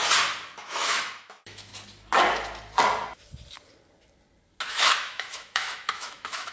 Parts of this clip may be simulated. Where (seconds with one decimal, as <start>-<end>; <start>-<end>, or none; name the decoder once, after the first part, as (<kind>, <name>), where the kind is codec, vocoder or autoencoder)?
0.6-1.7 (autoencoder, DAC-VAE); 4.7-6.5